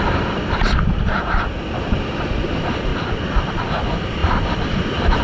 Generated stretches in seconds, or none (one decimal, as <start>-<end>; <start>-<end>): 0.0-2.9; 3.5-4.2